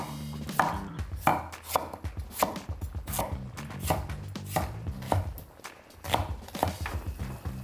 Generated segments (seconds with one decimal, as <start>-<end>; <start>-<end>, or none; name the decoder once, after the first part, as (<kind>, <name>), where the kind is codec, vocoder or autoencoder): none